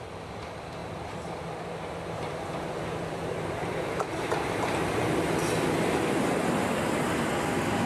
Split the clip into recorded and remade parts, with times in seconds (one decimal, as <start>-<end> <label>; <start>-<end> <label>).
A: 0.0-0.8 recorded; 0.8-5.0 remade; 5.0-7.9 recorded

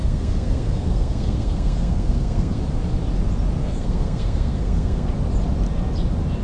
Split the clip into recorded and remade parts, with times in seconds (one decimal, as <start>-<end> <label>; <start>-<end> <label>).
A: 0.0-2.6 remade; 2.6-3.6 recorded; 3.6-5.1 remade; 5.1-6.4 recorded

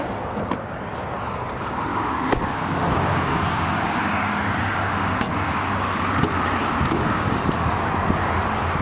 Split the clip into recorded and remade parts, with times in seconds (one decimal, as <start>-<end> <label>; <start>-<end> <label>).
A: 0.0-1.9 recorded; 1.9-6.1 remade; 6.1-6.6 recorded; 6.6-7.4 remade; 7.4-8.8 recorded

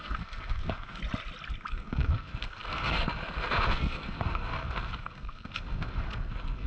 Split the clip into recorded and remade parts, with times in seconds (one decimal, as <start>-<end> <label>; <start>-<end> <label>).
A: 0.0-1.0 remade; 1.0-1.7 recorded; 1.7-6.7 remade

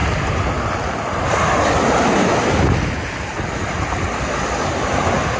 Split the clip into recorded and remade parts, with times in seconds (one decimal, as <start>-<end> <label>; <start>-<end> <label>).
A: 0.0-3.2 recorded; 3.2-5.4 remade

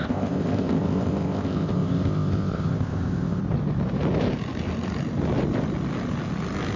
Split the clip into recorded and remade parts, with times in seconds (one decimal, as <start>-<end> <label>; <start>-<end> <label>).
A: 0.0-3.4 remade; 3.4-6.8 recorded

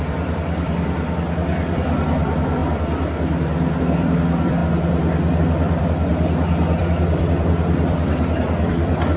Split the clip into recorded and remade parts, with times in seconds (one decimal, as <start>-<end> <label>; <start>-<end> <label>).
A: 0.0-2.6 remade; 2.6-3.8 recorded; 3.8-4.6 remade; 4.6-5.4 recorded; 5.4-6.1 remade; 6.1-6.8 recorded; 6.8-9.2 remade